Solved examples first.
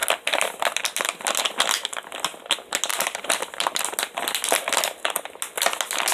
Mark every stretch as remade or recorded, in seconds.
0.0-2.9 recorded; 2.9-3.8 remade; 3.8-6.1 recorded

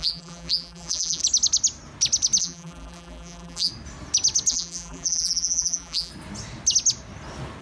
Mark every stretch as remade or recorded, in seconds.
0.0-1.2 remade; 1.2-2.4 recorded; 2.4-3.7 remade; 3.7-4.5 recorded; 4.5-6.1 remade; 6.1-7.6 recorded

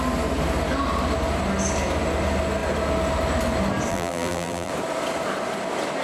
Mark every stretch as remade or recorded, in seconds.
0.0-3.9 recorded; 3.9-4.7 remade; 4.7-6.0 recorded

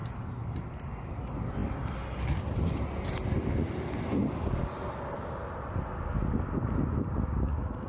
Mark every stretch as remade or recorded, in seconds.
0.0-7.9 recorded

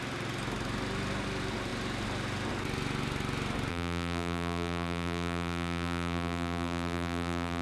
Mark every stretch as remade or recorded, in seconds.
0.0-3.7 recorded; 3.7-7.6 remade

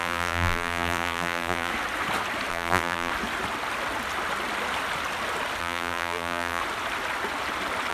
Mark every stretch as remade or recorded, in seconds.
0.0-1.7 remade; 1.7-2.5 recorded; 2.5-3.1 remade; 3.1-5.6 recorded; 5.6-6.6 remade; 6.6-7.9 recorded

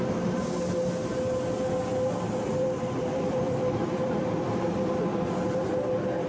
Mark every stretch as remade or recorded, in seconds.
0.0-1.9 recorded; 1.9-5.7 remade; 5.7-6.3 recorded